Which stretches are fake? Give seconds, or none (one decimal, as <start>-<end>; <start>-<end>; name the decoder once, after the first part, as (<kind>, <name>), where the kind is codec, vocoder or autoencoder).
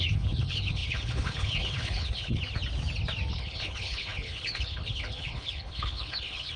0.0-2.4 (codec, HILCodec); 3.3-6.6